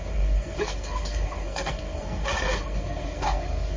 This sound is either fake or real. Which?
fake